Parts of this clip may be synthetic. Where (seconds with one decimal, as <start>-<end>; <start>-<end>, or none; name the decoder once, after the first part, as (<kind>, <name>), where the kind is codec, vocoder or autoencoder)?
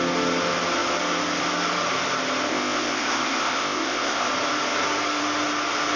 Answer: 2.5-4.3 (codec, ZipCodec)